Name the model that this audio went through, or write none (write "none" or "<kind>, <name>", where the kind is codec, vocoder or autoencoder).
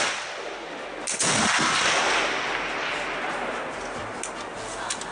none